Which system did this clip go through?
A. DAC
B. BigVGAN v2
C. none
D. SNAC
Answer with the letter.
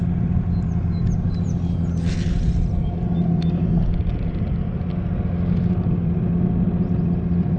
C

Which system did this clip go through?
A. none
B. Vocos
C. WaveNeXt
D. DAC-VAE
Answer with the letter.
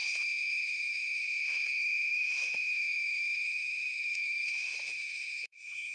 D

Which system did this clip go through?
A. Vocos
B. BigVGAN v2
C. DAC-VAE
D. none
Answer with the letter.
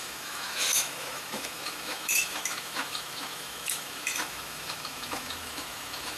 C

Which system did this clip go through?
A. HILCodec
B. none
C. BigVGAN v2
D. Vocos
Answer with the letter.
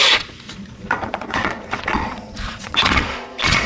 D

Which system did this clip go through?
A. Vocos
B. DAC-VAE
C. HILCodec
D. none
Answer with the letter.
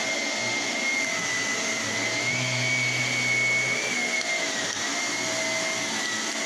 D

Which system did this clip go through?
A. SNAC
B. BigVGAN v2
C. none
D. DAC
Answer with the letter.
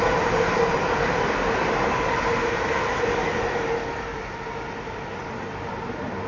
C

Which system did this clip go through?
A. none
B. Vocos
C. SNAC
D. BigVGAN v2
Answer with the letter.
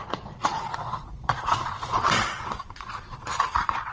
B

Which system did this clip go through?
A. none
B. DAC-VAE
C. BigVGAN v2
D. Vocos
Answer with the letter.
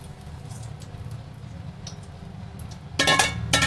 A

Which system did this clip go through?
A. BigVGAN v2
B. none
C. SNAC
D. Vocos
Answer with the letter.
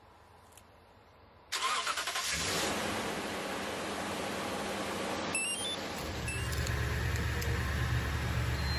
B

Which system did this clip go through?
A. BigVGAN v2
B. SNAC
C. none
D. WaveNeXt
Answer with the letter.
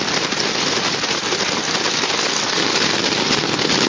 C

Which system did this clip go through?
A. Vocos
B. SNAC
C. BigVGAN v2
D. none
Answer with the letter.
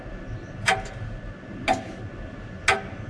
D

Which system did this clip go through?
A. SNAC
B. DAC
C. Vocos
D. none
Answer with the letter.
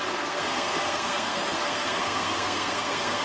A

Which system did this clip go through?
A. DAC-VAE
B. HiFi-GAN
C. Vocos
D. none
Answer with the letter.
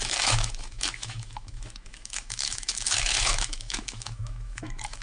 A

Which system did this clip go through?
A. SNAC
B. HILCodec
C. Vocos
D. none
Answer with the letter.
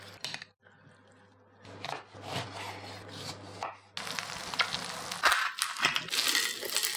D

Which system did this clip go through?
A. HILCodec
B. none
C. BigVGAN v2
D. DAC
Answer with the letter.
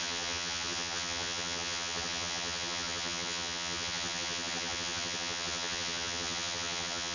C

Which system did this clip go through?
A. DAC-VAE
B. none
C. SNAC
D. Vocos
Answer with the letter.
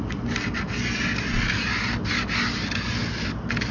B